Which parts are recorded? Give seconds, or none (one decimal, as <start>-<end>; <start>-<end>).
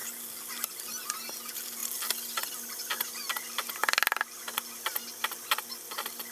0.0-6.3